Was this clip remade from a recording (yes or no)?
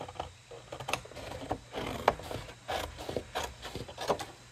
no